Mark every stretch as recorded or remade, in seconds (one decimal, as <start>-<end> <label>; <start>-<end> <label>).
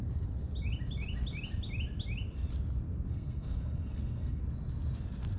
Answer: 0.0-3.1 recorded; 3.1-4.4 remade; 4.4-5.4 recorded